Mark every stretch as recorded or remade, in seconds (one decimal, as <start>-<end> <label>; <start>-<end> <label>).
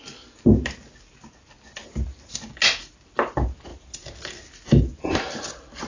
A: 0.0-5.9 recorded